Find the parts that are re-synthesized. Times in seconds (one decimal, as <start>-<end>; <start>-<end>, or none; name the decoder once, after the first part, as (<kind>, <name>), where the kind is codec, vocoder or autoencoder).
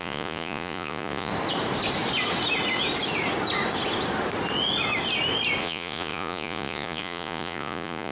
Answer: 0.0-1.3 (vocoder, Vocos); 5.6-8.1